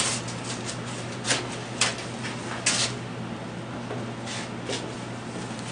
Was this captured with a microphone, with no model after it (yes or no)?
yes